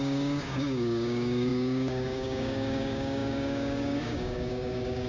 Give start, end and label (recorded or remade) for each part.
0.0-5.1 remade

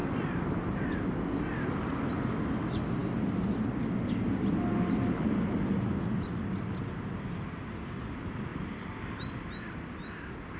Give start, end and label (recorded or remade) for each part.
0.0-10.6 recorded

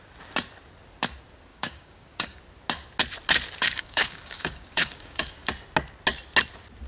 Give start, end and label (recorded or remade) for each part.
0.0-1.5 recorded; 1.5-2.4 remade; 2.4-3.6 recorded; 3.6-5.5 remade; 5.5-6.9 recorded

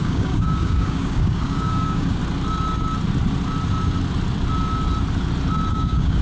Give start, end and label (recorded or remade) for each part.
0.0-2.2 remade; 2.2-5.7 recorded; 5.7-6.2 remade

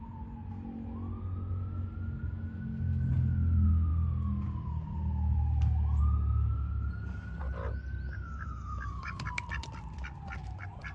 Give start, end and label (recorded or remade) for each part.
0.0-8.7 recorded; 8.7-9.2 remade; 9.2-10.9 recorded